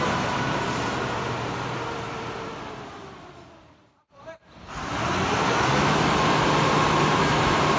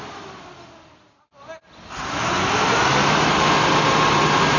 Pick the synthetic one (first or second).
first